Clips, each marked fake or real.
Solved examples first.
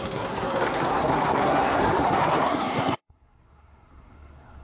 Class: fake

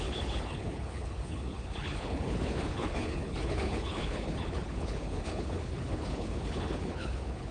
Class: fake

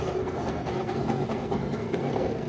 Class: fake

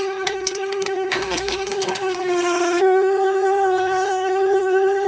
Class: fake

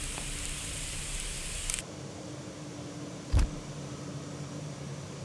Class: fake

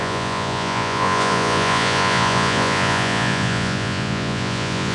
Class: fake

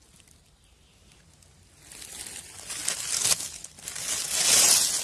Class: real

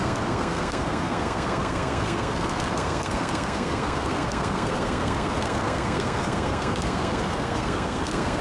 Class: fake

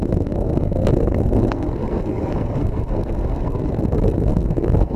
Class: fake